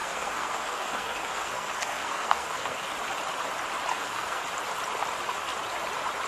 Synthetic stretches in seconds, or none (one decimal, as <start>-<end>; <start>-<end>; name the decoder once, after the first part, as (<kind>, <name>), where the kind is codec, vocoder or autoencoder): 0.0-2.9 (codec, SNAC); 3.9-4.4